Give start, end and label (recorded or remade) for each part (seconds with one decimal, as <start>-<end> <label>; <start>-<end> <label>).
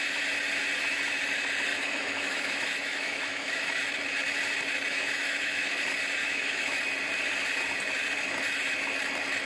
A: 0.0-1.7 recorded; 1.7-3.8 remade; 3.8-4.9 recorded; 4.9-5.7 remade; 5.7-6.2 recorded; 6.2-6.8 remade; 6.8-9.5 recorded